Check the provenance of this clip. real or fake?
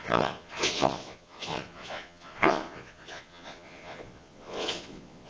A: fake